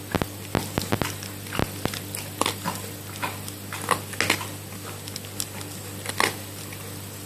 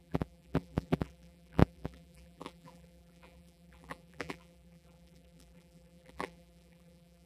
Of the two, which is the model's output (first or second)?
second